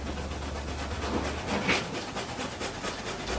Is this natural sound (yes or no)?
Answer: yes